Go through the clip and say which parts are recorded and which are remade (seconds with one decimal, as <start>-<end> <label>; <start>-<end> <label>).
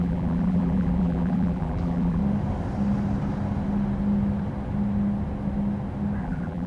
0.0-2.2 remade; 2.2-6.2 recorded; 6.2-6.7 remade